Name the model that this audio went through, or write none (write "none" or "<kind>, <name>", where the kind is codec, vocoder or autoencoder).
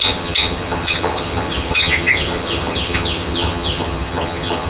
vocoder, HiFi-GAN